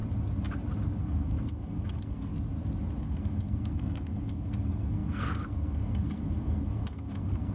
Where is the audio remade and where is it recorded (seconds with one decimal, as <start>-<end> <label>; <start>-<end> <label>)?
0.0-1.0 recorded; 1.0-2.3 remade; 2.3-3.0 recorded; 3.0-7.5 remade